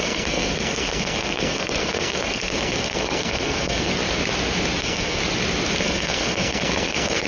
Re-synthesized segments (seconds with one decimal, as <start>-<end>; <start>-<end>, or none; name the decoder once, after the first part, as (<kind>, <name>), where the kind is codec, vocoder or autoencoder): 0.0-3.9 (codec, SNAC); 4.8-5.2; 5.8-7.3